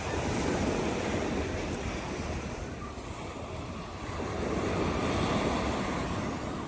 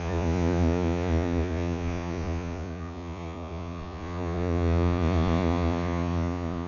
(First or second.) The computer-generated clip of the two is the second